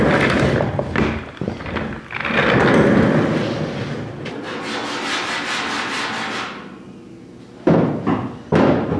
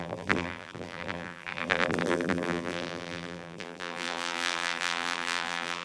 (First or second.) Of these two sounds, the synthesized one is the second